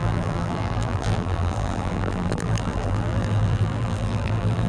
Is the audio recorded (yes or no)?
no